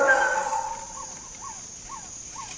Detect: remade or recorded recorded